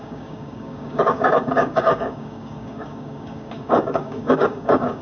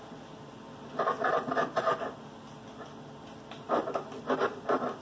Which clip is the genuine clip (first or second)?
second